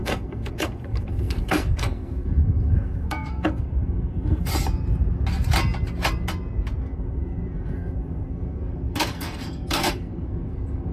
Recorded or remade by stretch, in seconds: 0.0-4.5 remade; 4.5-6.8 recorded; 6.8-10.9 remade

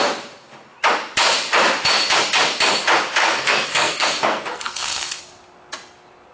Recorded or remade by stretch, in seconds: 0.0-3.2 recorded; 3.2-5.2 remade; 5.2-6.3 recorded

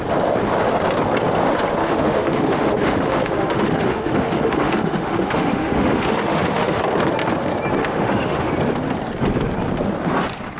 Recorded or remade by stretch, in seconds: 0.0-1.8 recorded; 1.8-6.8 remade; 6.8-7.8 recorded; 7.8-8.5 remade; 8.5-10.6 recorded

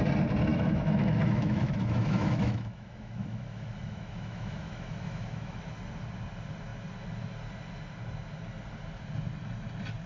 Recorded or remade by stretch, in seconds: 0.0-0.5 recorded; 0.5-5.6 remade; 5.6-10.1 recorded

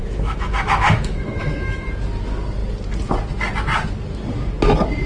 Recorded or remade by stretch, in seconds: 0.0-1.9 remade; 1.9-5.1 recorded

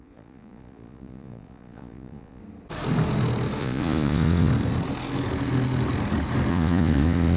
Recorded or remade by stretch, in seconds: 0.0-2.4 remade; 2.4-3.6 recorded; 3.6-4.5 remade; 4.5-6.5 recorded; 6.5-7.4 remade

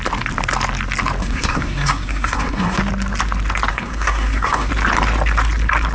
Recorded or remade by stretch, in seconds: 0.0-1.2 recorded; 1.2-2.8 remade; 2.8-3.7 recorded; 3.7-4.7 remade; 4.7-5.9 recorded

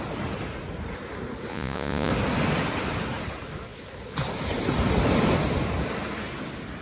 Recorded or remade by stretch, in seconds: 0.0-1.5 recorded; 1.5-2.1 remade; 2.1-6.8 recorded